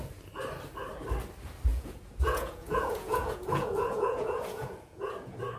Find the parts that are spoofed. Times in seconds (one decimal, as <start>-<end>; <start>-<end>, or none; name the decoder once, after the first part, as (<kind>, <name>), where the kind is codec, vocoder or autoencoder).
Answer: 1.7-5.1 (vocoder, Vocos)